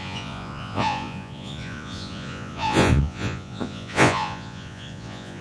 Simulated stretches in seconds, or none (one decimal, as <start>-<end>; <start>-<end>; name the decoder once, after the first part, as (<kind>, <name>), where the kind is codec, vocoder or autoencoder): 0.0-5.4 (vocoder, Vocos)